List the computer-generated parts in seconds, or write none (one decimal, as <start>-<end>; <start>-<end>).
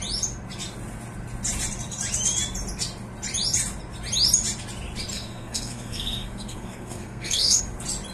5.1-7.6